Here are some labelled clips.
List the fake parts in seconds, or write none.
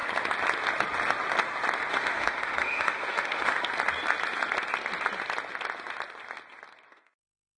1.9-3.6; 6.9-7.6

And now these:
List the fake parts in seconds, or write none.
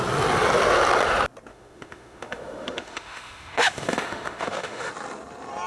1.5-4.9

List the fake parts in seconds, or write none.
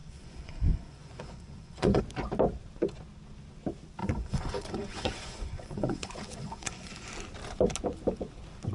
0.0-2.0; 4.0-7.1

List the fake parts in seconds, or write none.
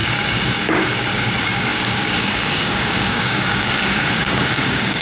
0.0-5.0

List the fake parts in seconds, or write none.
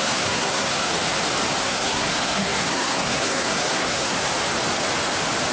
0.0-0.9; 1.6-4.3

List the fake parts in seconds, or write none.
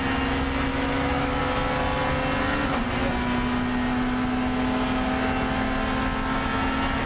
0.7-1.4